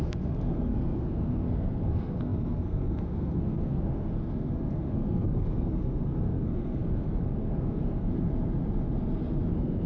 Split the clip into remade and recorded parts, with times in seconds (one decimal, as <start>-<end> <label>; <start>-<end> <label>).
0.0-8.1 remade; 8.1-9.5 recorded; 9.5-9.9 remade